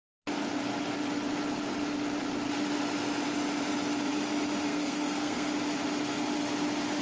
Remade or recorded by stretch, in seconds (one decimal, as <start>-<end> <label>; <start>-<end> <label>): 0.0-4.7 recorded; 4.7-5.5 remade; 5.5-7.0 recorded